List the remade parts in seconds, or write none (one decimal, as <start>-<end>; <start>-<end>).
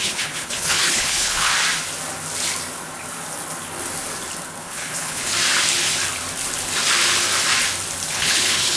0.0-1.5; 4.6-5.3; 8.1-8.8